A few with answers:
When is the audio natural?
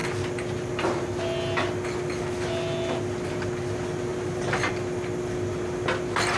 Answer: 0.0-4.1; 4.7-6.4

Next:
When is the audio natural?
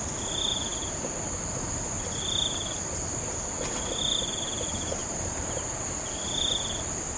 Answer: 0.0-5.0; 5.8-7.2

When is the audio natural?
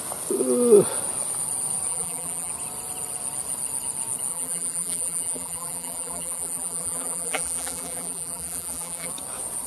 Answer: 0.0-1.9; 2.5-4.3; 9.1-9.7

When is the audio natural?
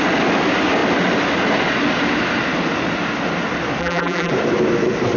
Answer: 0.0-3.8; 4.3-5.2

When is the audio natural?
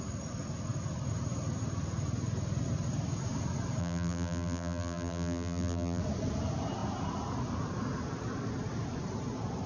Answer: 0.0-3.8; 6.0-9.7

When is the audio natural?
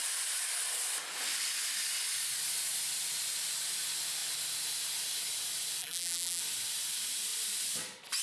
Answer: 0.0-5.8; 6.4-8.2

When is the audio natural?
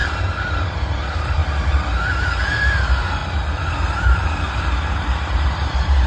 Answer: 1.4-2.2; 3.2-3.7